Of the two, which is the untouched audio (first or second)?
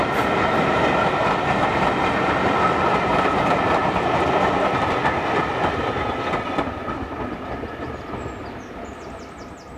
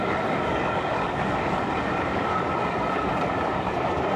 first